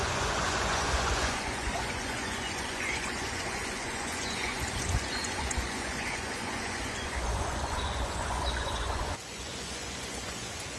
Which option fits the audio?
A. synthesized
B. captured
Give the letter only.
A